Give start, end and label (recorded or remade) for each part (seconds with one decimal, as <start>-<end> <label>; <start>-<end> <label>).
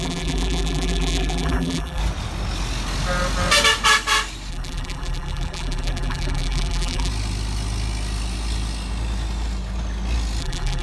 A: 0.0-2.0 remade; 2.0-4.5 recorded; 4.5-7.1 remade; 7.1-10.4 recorded; 10.4-10.8 remade